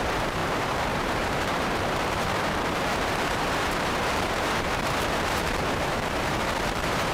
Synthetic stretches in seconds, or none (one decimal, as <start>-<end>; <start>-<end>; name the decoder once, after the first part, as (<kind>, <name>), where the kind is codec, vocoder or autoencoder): 0.0-7.1 (vocoder, BigVGAN v2)